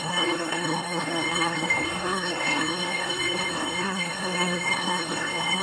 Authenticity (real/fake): fake